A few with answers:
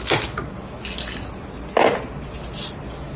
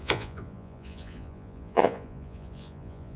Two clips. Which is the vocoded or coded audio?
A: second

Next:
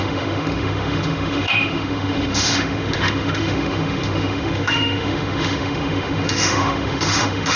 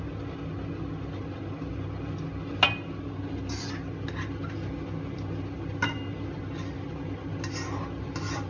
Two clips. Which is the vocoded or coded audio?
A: first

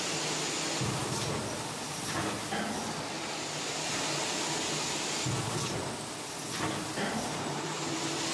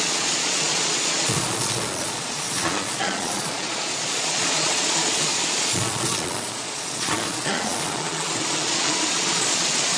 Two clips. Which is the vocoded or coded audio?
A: second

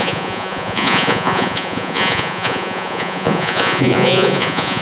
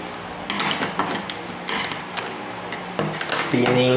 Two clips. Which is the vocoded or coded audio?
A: first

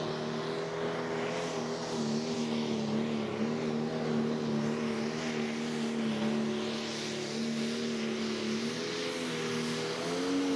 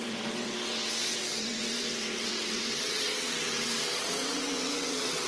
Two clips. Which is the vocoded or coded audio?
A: second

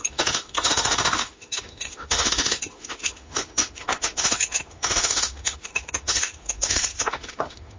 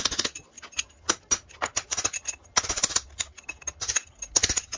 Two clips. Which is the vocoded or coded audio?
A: first